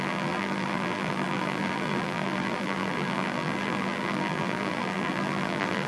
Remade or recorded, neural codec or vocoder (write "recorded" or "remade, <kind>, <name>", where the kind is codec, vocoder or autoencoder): remade, vocoder, BigVGAN v2